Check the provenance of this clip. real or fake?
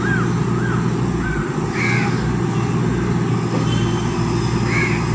real